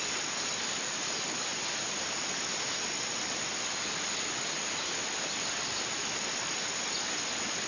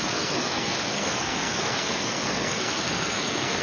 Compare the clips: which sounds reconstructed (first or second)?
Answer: second